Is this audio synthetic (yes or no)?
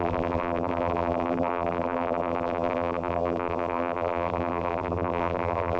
yes